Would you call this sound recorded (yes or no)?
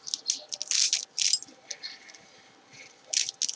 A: yes